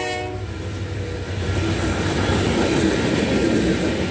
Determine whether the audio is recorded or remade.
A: recorded